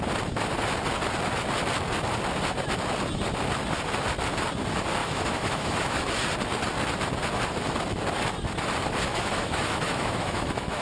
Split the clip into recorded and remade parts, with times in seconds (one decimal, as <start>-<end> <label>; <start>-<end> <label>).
0.0-5.0 recorded; 5.0-6.1 remade; 6.1-9.1 recorded; 9.1-10.8 remade

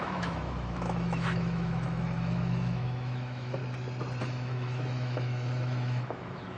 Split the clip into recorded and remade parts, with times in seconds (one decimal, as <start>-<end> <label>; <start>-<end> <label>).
0.0-3.6 remade; 3.6-4.2 recorded; 4.2-6.6 remade